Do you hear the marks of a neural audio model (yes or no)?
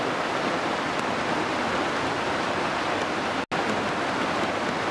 no